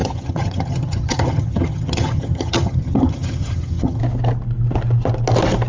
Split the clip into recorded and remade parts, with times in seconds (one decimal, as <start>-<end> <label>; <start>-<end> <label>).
0.0-4.0 remade; 4.0-5.7 recorded